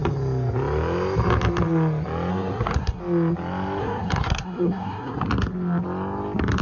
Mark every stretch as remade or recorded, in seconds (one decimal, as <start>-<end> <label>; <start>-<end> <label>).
0.0-2.3 recorded; 2.3-3.0 remade; 3.0-3.8 recorded; 3.8-5.3 remade; 5.3-6.6 recorded